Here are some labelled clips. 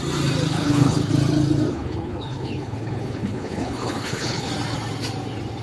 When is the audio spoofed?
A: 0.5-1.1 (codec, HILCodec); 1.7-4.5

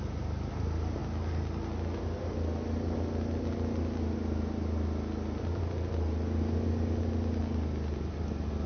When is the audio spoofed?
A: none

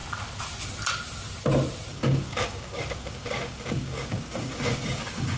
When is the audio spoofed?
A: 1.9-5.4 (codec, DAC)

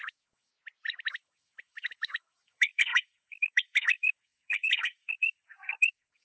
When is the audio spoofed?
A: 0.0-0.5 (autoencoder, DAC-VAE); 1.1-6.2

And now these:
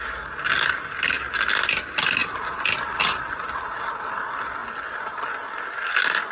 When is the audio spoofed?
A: none

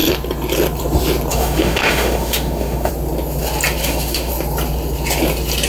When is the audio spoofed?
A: 1.3-2.9 (autoencoder, DAC-VAE); 3.8-4.3